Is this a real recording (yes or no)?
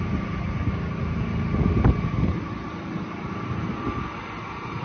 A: yes